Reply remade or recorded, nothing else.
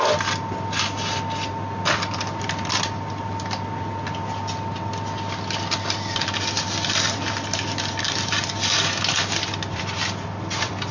recorded